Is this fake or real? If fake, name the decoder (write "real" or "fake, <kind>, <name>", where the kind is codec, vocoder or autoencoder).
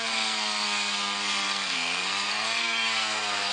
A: fake, codec, SNAC